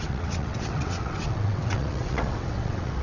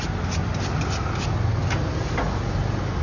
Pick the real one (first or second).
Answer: second